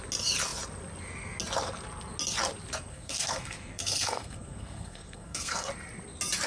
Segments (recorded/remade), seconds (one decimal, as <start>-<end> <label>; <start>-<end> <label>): 0.0-2.9 recorded; 2.9-5.7 remade; 5.7-6.5 recorded